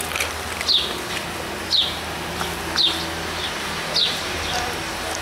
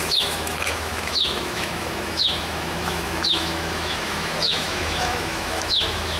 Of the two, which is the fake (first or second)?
second